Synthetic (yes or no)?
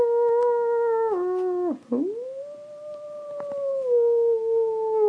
no